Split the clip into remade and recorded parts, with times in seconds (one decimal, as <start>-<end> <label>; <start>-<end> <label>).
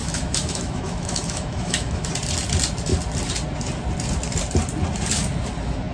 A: 0.0-2.1 remade; 2.1-5.9 recorded